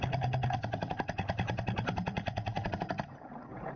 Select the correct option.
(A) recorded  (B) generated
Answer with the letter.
B